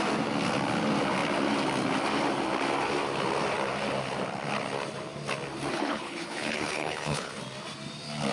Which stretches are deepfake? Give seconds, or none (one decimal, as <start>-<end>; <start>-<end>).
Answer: 5.7-7.4